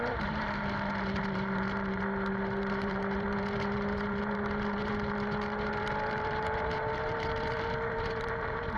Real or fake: fake